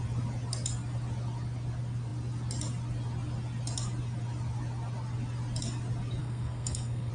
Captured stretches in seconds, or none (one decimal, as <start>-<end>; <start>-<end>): 0.0-6.2